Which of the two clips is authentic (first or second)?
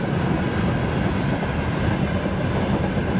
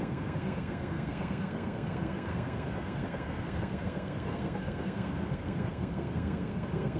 first